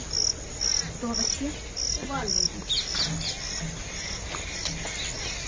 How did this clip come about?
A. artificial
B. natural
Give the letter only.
B